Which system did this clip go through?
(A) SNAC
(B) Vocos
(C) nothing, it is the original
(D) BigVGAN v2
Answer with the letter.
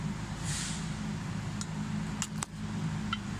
C